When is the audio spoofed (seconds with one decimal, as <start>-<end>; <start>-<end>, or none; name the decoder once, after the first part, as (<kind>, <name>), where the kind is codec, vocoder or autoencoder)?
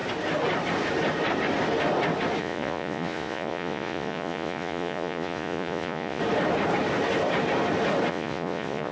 2.4-6.2 (vocoder, Vocos); 8.1-8.9